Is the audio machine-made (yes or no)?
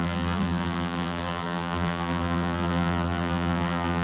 yes